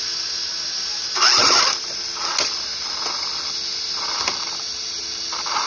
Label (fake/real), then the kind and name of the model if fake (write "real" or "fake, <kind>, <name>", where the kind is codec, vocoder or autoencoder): real